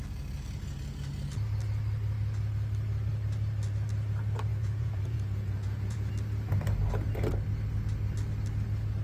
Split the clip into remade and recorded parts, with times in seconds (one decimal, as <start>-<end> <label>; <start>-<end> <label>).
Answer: 0.0-4.5 recorded; 4.5-6.1 remade; 6.1-9.0 recorded